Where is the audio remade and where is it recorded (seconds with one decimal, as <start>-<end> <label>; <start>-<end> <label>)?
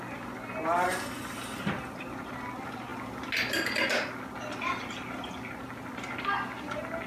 0.0-7.1 recorded